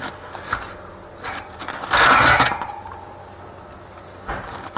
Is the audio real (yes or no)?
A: yes